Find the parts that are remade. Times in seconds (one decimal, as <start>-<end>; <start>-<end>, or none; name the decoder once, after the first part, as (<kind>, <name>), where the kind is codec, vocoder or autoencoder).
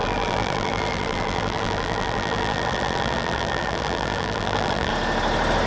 0.0-4.9 (vocoder, BigVGAN v2)